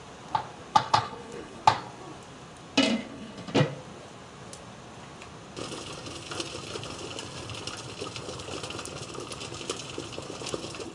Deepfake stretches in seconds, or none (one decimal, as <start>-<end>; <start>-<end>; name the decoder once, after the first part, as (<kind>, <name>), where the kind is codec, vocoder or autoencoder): 0.7-1.6 (codec, HILCodec); 3.0-3.5